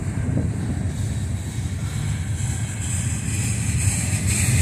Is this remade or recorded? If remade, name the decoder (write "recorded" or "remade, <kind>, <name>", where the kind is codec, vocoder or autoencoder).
recorded